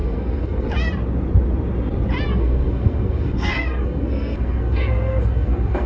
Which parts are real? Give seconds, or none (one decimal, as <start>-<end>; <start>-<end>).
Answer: 0.7-2.3